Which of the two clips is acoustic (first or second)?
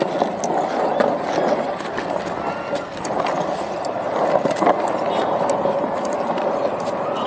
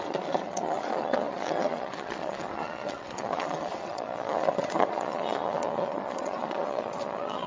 first